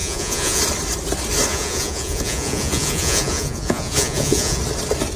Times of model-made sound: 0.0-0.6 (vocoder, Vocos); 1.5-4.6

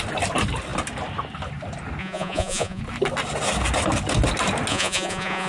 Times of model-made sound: 2.0-2.8 (vocoder, Vocos); 4.7-5.5